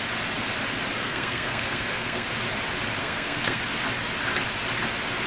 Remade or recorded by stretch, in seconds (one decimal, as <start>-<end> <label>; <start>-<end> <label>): 0.0-1.0 recorded; 1.0-2.3 remade; 2.3-3.0 recorded; 3.0-3.6 remade; 3.6-5.3 recorded